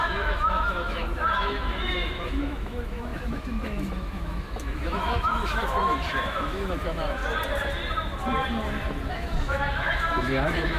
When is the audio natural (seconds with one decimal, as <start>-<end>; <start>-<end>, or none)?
7.2-9.1